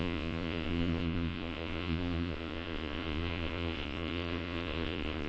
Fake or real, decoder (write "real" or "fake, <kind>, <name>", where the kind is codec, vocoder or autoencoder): fake, vocoder, Vocos